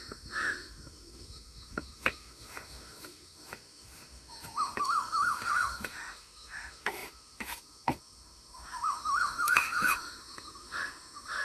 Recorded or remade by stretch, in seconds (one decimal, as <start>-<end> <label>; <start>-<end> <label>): 0.0-11.4 remade